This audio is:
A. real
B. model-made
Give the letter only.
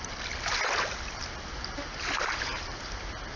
A